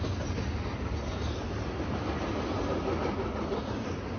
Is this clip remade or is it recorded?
recorded